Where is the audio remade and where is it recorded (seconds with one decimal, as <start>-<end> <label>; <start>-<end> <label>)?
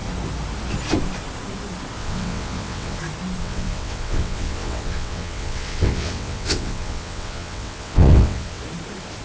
0.0-2.0 recorded; 2.0-3.0 remade; 3.0-3.4 recorded; 3.4-8.6 remade; 8.6-9.2 recorded